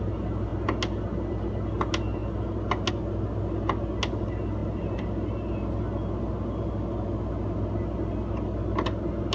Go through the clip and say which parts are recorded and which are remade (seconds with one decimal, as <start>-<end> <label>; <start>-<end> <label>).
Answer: 0.0-9.3 recorded